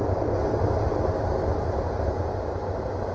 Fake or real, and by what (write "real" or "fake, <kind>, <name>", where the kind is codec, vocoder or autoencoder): real